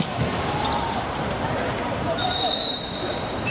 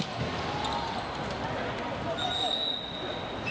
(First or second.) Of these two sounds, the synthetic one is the first